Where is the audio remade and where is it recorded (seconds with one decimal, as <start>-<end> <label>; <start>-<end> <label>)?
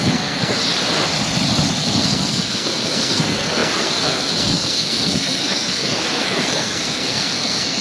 0.0-0.6 remade; 0.6-1.8 recorded; 1.8-7.8 remade